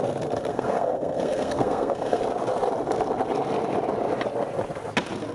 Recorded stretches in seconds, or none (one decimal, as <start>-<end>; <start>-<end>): 0.0-0.5; 2.2-5.3